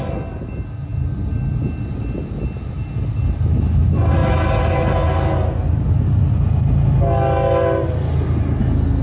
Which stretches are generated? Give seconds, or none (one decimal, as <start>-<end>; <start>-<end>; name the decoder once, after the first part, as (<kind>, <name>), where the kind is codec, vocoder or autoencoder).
none